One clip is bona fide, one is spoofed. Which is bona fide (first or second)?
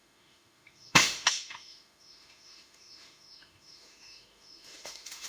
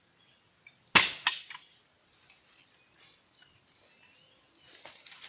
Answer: second